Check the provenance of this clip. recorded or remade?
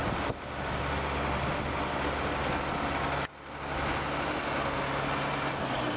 recorded